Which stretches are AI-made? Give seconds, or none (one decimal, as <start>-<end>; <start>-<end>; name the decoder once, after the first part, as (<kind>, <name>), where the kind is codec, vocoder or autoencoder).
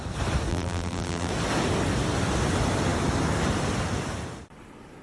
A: 0.5-1.3 (vocoder, BigVGAN v2)